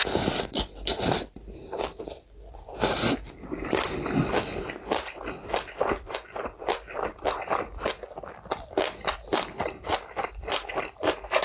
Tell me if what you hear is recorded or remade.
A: recorded